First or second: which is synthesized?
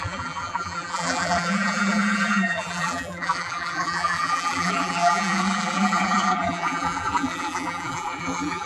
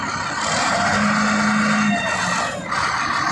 first